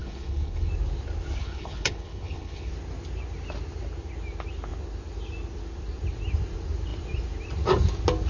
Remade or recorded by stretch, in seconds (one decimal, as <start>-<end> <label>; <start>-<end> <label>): 0.0-0.7 remade; 0.7-1.4 recorded; 1.4-2.7 remade; 2.7-8.3 recorded